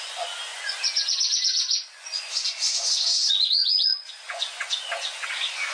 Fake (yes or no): yes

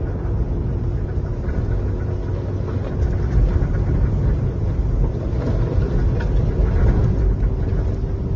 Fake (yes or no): no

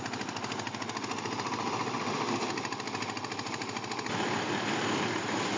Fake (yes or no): no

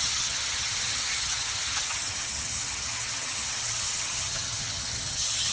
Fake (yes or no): yes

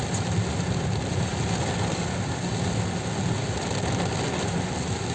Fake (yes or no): no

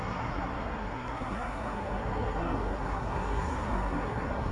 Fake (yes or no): yes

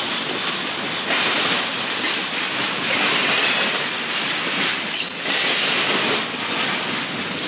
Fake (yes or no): yes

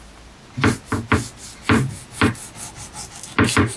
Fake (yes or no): no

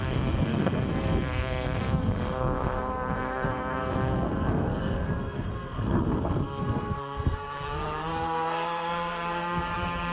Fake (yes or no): yes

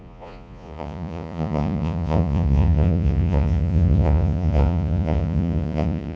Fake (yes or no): yes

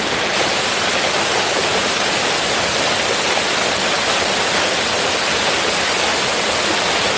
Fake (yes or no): no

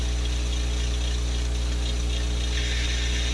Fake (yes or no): no